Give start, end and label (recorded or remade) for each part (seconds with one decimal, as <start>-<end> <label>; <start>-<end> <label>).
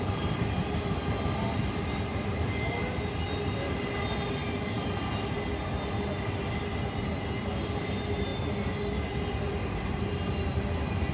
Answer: 0.0-11.1 recorded